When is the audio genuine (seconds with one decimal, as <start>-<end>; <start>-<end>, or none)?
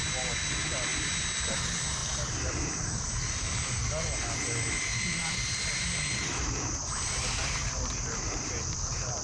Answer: 0.0-9.2